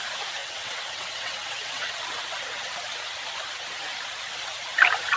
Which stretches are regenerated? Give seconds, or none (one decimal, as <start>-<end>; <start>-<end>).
0.4-2.0